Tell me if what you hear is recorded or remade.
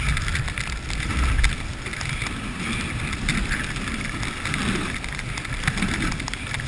recorded